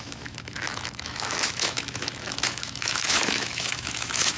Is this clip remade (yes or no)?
yes